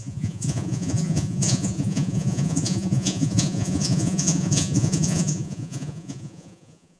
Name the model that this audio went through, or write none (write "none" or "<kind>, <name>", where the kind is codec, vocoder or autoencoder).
vocoder, Vocos